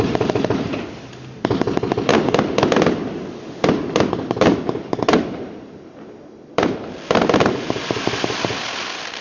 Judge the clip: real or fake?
real